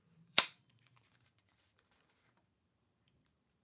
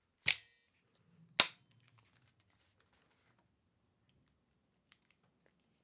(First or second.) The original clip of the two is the second